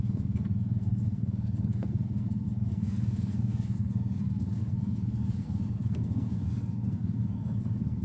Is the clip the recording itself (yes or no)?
no